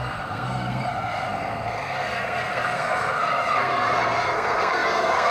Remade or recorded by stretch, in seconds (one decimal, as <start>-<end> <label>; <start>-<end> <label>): 0.0-5.3 remade